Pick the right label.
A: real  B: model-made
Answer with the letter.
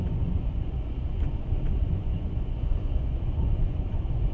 B